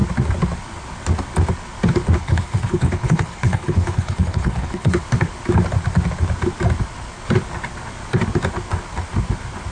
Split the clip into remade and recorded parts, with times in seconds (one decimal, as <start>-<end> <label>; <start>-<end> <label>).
0.0-2.2 recorded; 2.2-5.0 remade; 5.0-9.7 recorded